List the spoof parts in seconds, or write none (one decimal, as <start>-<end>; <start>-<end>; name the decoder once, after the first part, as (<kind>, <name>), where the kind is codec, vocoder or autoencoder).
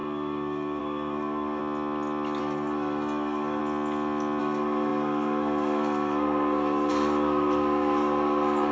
0.0-1.6 (codec, SNAC); 2.4-3.6; 4.4-8.7